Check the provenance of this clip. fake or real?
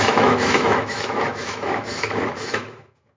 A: fake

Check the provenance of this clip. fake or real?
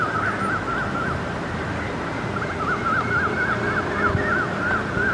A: real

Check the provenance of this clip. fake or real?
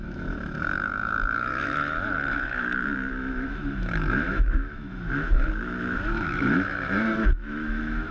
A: fake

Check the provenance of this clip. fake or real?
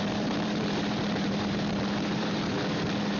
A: fake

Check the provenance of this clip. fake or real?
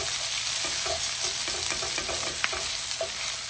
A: real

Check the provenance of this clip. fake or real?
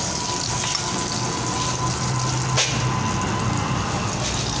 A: real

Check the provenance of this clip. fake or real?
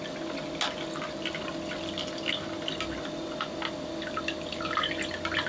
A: real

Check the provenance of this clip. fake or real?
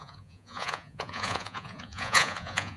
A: fake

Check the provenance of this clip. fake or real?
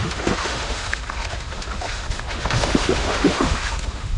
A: fake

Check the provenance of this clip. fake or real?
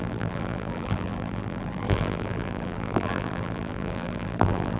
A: fake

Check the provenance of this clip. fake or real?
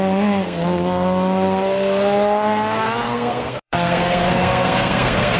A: fake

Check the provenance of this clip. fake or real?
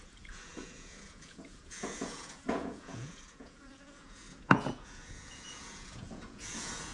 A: fake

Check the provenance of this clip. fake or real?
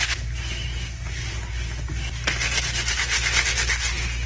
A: real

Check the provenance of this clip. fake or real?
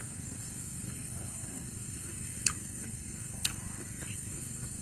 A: fake